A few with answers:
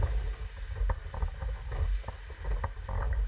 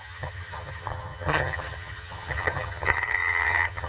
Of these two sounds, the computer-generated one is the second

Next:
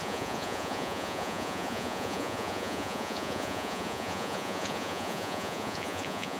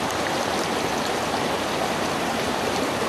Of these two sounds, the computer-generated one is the first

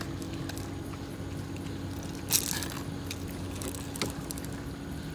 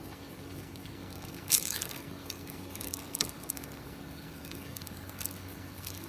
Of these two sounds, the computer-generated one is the second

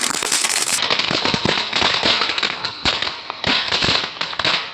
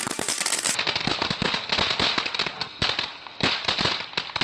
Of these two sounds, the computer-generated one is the first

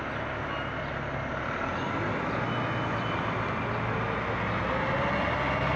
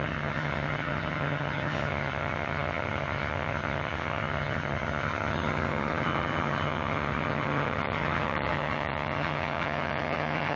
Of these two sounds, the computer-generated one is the second